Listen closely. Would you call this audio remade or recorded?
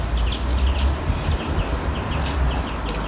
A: recorded